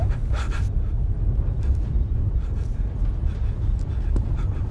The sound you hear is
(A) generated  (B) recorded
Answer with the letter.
B